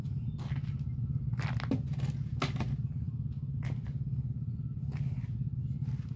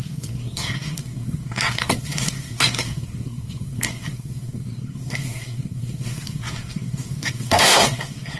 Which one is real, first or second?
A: first